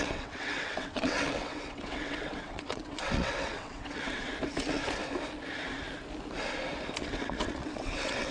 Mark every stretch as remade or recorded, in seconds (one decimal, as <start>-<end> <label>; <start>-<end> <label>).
0.0-4.3 remade; 4.3-7.0 recorded; 7.0-8.3 remade